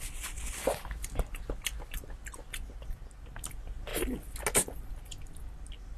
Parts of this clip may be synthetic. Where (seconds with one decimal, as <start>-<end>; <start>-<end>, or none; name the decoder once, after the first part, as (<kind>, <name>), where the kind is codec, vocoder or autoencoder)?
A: none